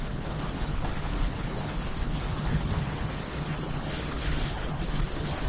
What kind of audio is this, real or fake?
fake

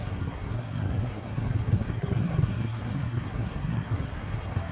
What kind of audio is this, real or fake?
fake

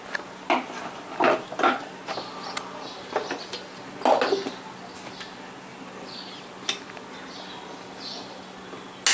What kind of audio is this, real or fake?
real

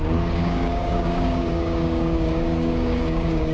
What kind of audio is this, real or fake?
fake